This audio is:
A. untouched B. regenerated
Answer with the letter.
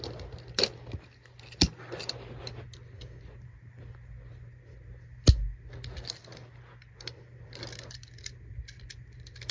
A